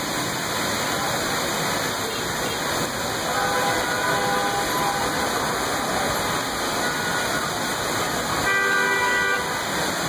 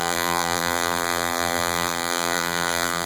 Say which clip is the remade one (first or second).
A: second